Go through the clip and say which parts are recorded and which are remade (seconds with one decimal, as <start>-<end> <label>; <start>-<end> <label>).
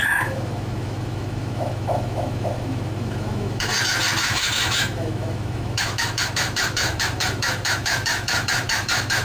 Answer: 0.0-3.7 remade; 3.7-4.2 recorded; 4.2-9.2 remade